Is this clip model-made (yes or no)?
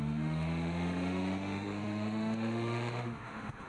yes